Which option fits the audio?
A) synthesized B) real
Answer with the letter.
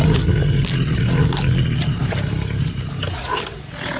B